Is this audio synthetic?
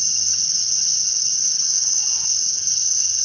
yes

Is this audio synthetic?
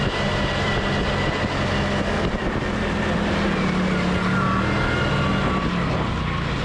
no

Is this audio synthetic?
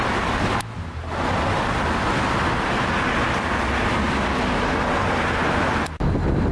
no